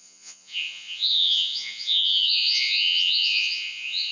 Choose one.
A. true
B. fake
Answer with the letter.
B